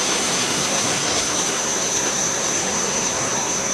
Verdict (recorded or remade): remade